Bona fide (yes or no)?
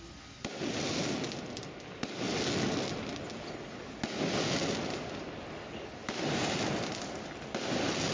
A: yes